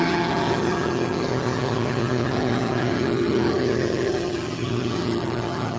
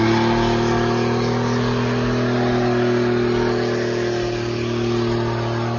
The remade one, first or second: first